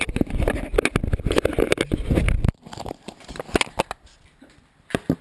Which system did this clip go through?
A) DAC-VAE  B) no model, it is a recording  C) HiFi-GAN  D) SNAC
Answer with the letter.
B